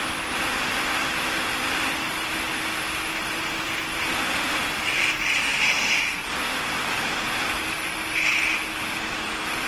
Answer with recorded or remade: recorded